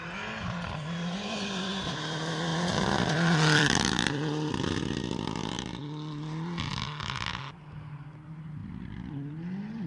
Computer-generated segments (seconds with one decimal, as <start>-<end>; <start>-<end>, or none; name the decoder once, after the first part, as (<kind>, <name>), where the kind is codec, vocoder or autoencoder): 2.5-4.5 (vocoder, BigVGAN v2); 8.6-9.1